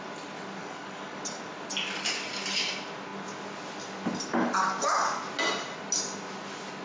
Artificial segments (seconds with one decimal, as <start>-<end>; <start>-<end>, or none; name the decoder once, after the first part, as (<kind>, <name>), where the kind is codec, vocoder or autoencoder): 0.6-1.2 (codec, DAC)